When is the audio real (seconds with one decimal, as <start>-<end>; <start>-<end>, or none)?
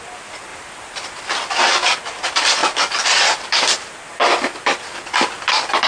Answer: 0.0-5.9